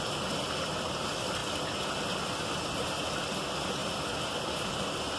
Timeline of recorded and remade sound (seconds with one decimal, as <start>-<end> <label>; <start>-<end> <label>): 0.0-5.2 recorded